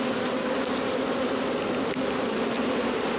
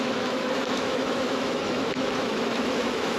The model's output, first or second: second